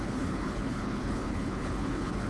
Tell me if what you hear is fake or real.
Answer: fake